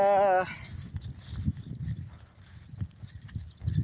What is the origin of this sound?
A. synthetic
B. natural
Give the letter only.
B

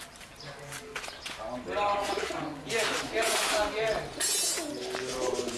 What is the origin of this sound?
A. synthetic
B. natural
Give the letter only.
B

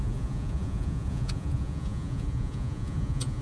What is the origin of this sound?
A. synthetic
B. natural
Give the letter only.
A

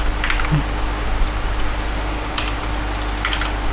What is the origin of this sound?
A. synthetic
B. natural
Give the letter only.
B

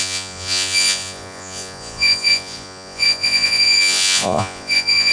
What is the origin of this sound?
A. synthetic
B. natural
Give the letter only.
A